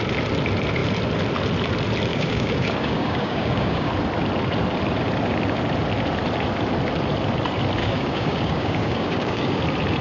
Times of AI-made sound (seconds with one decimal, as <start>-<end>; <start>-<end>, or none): 2.1-3.9; 7.8-9.6